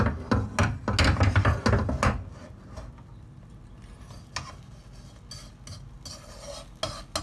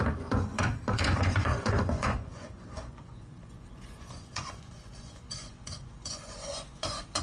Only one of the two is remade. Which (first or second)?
second